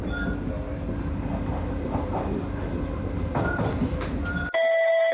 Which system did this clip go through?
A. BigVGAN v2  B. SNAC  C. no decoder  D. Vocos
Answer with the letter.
C